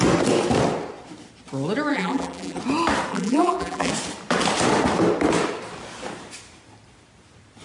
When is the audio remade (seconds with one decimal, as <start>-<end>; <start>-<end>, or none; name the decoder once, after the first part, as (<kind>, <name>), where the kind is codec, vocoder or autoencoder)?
1.9-2.6 (vocoder, BigVGAN v2); 3.1-3.9